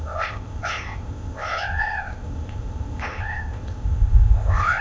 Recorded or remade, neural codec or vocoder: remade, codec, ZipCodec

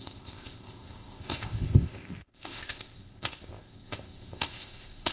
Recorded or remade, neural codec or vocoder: remade, codec, ZipCodec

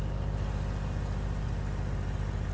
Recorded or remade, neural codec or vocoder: recorded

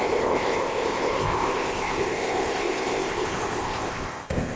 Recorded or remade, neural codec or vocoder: remade, codec, ZipCodec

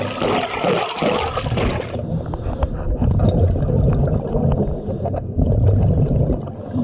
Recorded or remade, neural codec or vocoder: recorded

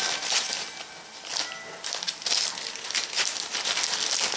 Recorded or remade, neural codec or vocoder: recorded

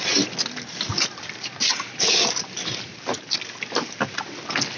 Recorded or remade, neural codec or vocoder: recorded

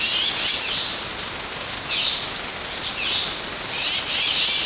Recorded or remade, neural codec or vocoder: recorded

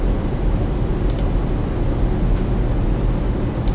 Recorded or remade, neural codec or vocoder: recorded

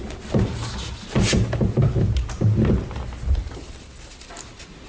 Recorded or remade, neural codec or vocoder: recorded